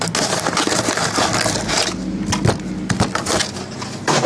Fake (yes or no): no